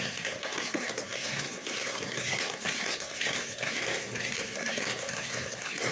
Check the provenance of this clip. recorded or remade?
remade